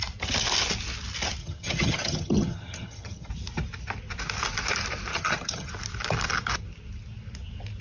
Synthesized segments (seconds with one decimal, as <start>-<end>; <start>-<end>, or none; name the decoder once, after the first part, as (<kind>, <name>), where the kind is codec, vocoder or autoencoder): 1.4-3.3 (vocoder, HiFi-GAN); 5.1-5.7